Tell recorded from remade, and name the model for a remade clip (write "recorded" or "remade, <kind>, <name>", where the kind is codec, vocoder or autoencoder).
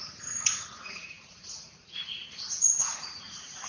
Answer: remade, vocoder, Vocos